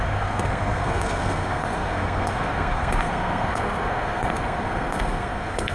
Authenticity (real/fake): fake